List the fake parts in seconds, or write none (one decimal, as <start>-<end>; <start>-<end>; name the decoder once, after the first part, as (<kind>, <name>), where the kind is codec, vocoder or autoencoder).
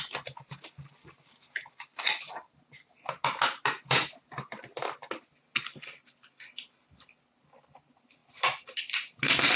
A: 1.9-2.6 (vocoder, BigVGAN v2)